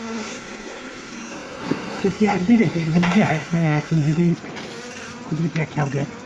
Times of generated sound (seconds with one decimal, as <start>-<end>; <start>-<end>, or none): 0.0-4.3